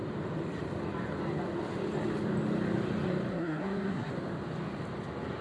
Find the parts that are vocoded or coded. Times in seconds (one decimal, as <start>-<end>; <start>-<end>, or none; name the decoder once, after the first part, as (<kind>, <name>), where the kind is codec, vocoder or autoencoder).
3.3-4.1 (codec, SNAC)